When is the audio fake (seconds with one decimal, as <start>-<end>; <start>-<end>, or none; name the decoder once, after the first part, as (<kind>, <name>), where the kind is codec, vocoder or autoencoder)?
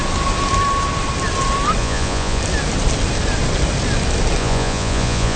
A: 1.8-2.4 (vocoder, Vocos); 4.4-5.4